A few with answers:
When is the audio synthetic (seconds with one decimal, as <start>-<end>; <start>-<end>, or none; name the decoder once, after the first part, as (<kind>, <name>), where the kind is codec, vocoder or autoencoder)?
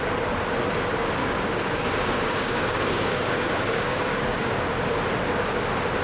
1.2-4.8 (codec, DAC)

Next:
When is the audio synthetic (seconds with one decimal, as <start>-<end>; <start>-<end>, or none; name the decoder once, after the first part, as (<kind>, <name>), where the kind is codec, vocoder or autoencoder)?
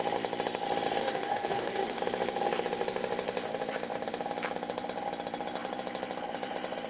1.0-2.0 (codec, DAC)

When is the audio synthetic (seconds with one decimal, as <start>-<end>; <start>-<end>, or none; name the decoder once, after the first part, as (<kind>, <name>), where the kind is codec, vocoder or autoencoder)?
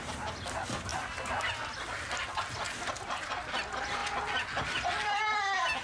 none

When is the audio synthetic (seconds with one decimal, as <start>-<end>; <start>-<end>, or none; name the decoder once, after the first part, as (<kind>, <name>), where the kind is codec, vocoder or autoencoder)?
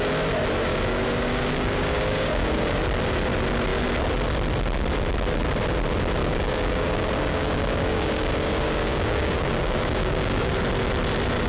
0.7-2.8 (codec, DAC); 6.2-10.5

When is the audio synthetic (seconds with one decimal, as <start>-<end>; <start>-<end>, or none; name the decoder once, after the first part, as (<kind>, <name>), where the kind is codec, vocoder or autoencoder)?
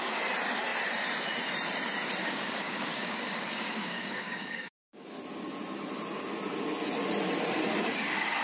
2.2-5.1 (codec, DAC)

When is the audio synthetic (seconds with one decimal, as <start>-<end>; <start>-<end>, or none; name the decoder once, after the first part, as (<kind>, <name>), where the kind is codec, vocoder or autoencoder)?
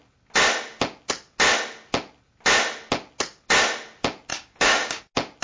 4.3-5.0 (codec, DAC)